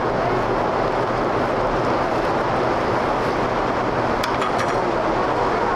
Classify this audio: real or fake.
real